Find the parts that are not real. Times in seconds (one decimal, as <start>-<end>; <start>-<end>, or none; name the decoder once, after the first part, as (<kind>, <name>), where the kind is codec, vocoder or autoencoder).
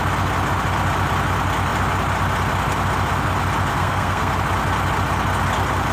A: 3.7-4.3 (codec, SNAC)